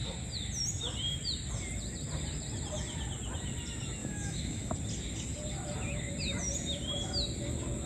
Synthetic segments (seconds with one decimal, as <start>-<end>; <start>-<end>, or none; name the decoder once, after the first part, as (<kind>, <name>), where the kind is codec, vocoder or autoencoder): 4.0-4.7 (autoencoder, DAC-VAE)